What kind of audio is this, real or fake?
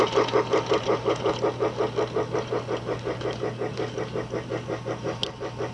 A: real